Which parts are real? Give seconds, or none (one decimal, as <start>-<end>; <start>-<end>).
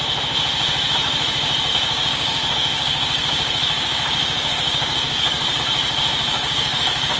0.0-1.7; 5.6-6.3